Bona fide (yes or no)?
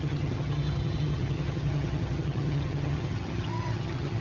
no